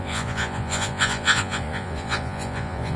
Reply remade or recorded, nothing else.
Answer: remade